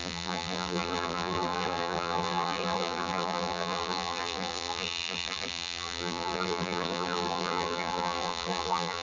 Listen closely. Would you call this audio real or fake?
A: fake